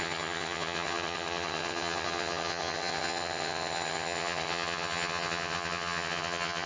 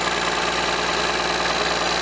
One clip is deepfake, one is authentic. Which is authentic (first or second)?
second